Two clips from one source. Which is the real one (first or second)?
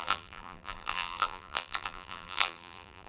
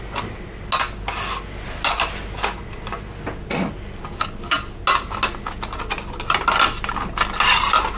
second